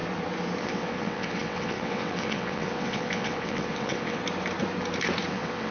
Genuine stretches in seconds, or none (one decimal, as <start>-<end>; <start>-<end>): 0.0-0.6; 4.2-5.3